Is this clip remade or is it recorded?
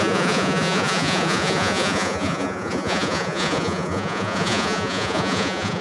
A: remade